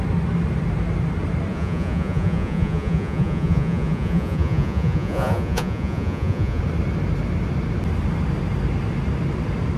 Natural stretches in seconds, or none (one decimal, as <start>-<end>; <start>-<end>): 0.0-1.5; 6.6-9.8

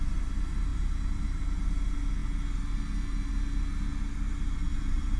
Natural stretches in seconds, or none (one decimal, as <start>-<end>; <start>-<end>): 0.0-0.7; 1.4-4.7

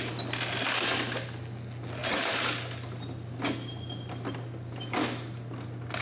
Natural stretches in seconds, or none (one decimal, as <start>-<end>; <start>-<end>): 0.0-6.0

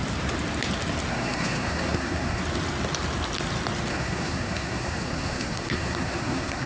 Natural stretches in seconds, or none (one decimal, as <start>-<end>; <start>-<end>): 0.0-1.1; 2.4-3.9

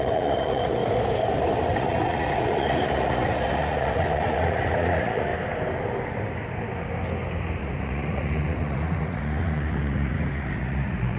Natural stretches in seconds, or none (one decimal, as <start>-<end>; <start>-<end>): 0.8-1.6; 5.3-7.6